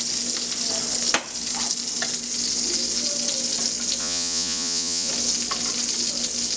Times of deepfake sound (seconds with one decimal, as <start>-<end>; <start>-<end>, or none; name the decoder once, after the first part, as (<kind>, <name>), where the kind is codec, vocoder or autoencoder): 4.0-5.1 (vocoder, Vocos)